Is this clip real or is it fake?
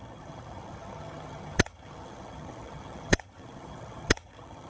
fake